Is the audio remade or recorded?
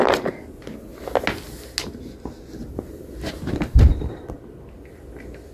recorded